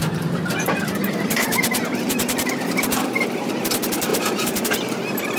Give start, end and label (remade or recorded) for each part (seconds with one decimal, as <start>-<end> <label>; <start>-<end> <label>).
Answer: 0.0-3.2 remade; 3.2-4.1 recorded; 4.1-4.9 remade; 4.9-5.4 recorded